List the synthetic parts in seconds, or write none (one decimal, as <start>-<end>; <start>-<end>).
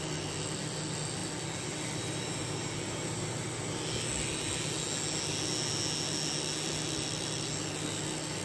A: none